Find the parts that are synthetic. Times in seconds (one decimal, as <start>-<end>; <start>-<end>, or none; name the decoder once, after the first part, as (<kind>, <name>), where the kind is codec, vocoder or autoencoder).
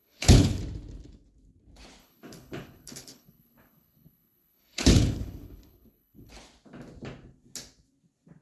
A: 0.0-0.6 (codec, HILCodec); 2.0-6.3